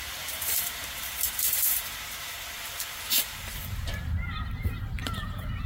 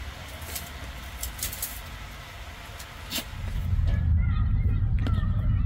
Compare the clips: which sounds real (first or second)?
second